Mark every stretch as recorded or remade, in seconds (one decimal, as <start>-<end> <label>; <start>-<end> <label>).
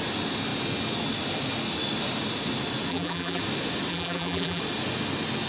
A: 0.0-2.9 recorded; 2.9-3.4 remade; 3.4-3.9 recorded; 3.9-4.6 remade; 4.6-5.5 recorded